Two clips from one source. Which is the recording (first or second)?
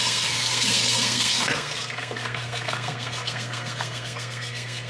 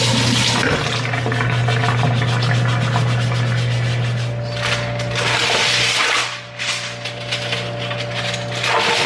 second